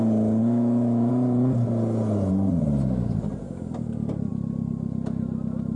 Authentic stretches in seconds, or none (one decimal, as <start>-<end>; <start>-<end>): 0.0-0.4; 1.1-5.8